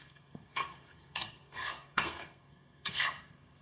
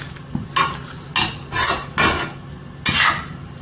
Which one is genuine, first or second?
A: second